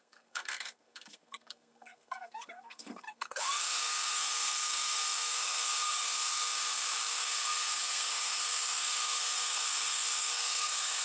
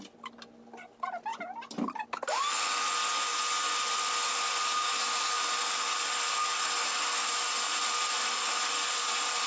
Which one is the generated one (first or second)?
first